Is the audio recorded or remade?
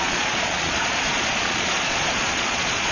remade